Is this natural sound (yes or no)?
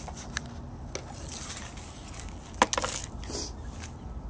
yes